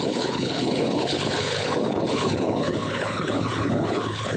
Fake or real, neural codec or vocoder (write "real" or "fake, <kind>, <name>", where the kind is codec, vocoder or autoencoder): fake, codec, HILCodec